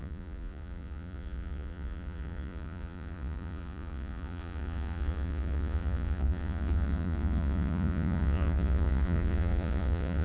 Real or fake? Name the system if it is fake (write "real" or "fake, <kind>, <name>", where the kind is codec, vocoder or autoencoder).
fake, vocoder, Vocos